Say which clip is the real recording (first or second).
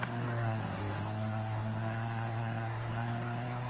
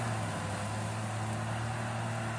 second